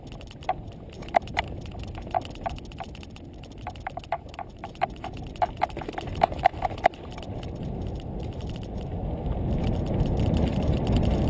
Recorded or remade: recorded